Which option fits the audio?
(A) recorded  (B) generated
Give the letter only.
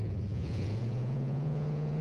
B